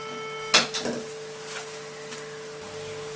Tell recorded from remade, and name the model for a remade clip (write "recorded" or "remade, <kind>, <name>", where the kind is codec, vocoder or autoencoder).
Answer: recorded